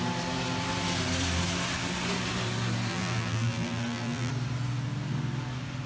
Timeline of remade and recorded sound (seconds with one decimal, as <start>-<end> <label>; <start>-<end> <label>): 0.0-2.9 recorded; 2.9-4.3 remade; 4.3-5.9 recorded